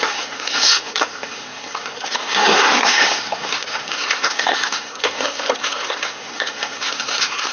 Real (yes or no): no